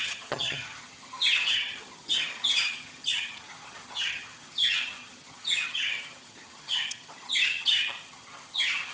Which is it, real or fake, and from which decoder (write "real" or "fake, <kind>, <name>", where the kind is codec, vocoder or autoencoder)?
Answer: fake, vocoder, HiFi-GAN